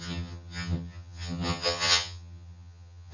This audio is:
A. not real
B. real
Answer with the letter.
A